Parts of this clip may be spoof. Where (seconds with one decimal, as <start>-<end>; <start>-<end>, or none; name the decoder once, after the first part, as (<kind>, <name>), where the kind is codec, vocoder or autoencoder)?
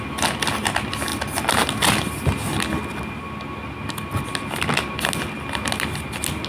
none